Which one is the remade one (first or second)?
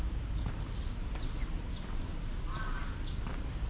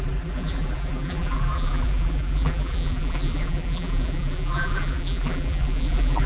second